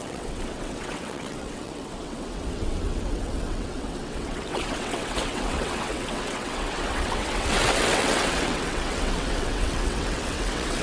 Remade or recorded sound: remade